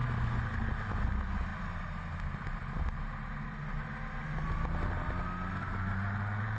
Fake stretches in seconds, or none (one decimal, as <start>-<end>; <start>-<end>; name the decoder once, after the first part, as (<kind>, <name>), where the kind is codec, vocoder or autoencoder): none